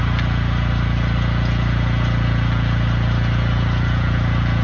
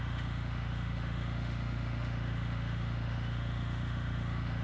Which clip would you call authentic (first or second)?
first